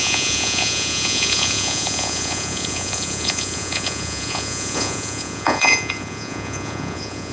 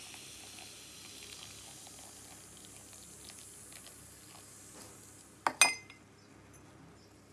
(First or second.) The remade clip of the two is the first